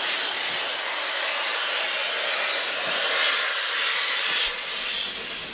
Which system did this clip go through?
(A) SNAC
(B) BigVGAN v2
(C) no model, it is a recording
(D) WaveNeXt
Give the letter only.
C